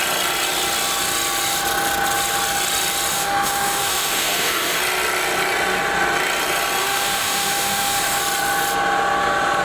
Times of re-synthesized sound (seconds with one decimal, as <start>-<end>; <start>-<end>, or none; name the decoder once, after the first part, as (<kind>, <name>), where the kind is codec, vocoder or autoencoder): 3.1-4.8 (autoencoder, DAC-VAE); 6.8-8.2

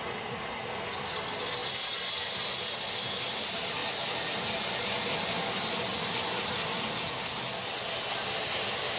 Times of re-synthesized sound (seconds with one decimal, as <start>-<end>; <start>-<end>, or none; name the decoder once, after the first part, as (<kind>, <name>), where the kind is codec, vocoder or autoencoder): none

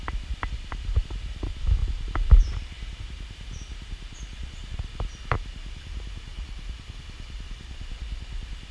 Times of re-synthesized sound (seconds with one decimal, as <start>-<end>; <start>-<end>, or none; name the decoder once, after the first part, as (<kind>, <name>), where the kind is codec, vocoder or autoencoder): none

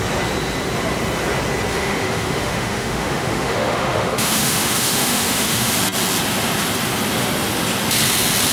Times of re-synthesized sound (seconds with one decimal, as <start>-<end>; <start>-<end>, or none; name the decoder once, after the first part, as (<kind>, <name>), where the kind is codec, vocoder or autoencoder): 1.7-5.7 (autoencoder, DAC-VAE)

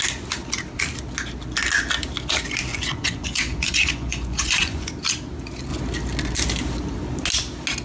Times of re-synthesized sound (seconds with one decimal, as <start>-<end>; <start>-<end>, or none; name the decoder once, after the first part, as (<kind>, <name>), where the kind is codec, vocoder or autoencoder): 2.7-4.9 (vocoder, Vocos)